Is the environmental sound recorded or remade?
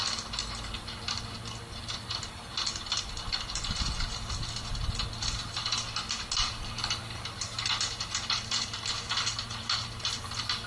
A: recorded